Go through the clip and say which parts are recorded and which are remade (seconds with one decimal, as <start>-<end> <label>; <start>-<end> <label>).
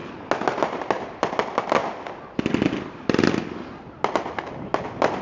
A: 0.0-5.2 recorded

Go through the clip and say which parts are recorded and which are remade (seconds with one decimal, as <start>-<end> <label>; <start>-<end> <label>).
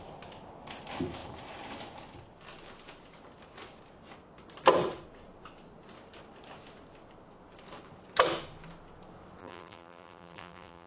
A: 0.0-9.4 recorded; 9.4-10.9 remade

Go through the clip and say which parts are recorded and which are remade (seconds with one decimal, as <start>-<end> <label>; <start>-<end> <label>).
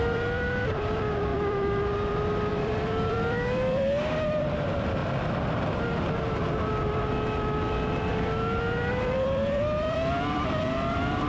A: 0.0-5.0 remade; 5.0-8.9 recorded; 8.9-11.3 remade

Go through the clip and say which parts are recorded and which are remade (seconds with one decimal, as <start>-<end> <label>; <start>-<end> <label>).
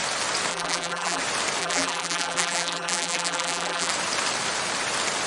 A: 0.0-0.5 recorded; 0.5-1.2 remade; 1.2-1.6 recorded; 1.6-3.9 remade; 3.9-5.3 recorded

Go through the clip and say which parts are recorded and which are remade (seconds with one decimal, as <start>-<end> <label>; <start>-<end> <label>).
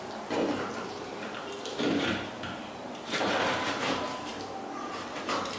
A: 0.0-1.1 recorded; 1.1-4.3 remade; 4.3-5.6 recorded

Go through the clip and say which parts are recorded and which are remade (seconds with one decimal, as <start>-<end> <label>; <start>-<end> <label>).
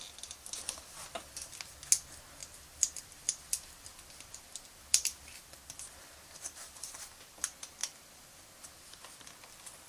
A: 0.0-2.4 recorded; 2.4-7.2 remade; 7.2-7.8 recorded; 7.8-8.5 remade; 8.5-9.9 recorded